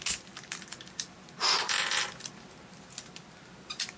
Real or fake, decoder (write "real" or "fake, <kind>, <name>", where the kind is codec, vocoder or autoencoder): real